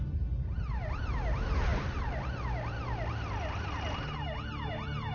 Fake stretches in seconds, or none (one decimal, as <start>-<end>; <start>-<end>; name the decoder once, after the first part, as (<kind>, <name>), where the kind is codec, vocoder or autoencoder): none